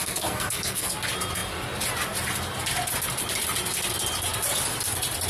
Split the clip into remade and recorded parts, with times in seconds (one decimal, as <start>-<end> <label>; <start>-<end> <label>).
0.0-0.9 remade; 0.9-5.3 recorded